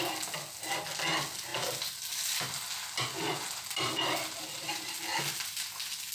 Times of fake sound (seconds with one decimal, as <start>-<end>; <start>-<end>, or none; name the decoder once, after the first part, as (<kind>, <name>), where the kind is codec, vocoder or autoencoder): none